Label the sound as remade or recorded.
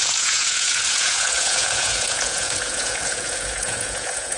remade